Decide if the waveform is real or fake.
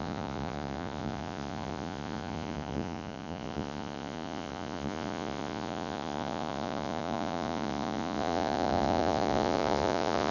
fake